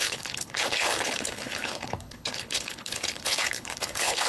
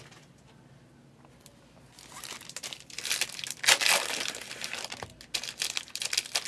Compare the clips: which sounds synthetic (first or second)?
first